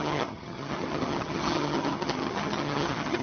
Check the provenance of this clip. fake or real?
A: fake